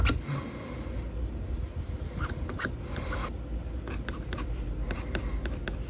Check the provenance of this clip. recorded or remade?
recorded